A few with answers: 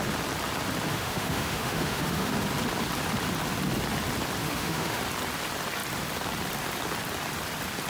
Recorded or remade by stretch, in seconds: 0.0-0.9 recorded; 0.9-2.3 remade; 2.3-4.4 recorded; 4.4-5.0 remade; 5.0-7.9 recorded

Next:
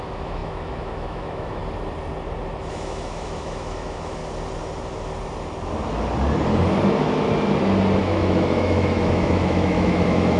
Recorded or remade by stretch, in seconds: 0.0-1.6 remade; 1.6-2.7 recorded; 2.7-4.2 remade; 4.2-8.0 recorded; 8.0-10.4 remade

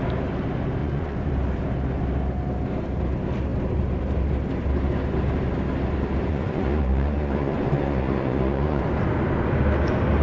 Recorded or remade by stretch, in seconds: 0.0-0.8 recorded; 0.8-1.3 remade; 1.3-6.3 recorded; 6.3-8.8 remade; 8.8-10.2 recorded

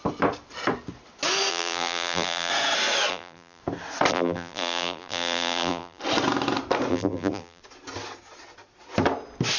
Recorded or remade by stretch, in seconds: 0.0-1.5 recorded; 1.5-2.5 remade; 2.5-3.1 recorded; 3.1-3.6 remade; 3.6-4.1 recorded; 4.1-6.0 remade; 6.0-6.9 recorded; 6.9-7.6 remade; 7.6-9.6 recorded

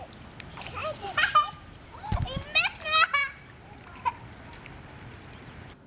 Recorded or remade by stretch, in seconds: 0.0-0.8 recorded; 0.8-2.8 remade; 2.8-5.9 recorded

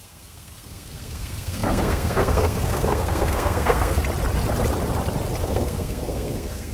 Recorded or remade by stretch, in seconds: 0.0-4.0 remade; 4.0-5.4 recorded; 5.4-6.7 remade

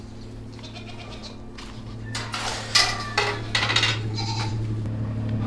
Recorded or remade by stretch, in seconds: 0.0-5.5 recorded